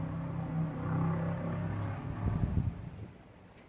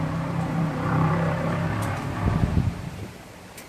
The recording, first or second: first